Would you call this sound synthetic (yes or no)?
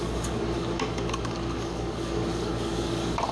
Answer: yes